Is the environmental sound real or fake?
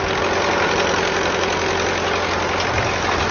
real